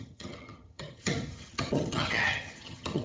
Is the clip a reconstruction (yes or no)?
yes